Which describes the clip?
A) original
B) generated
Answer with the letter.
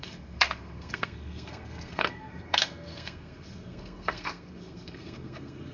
B